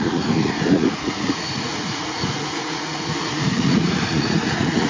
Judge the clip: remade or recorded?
remade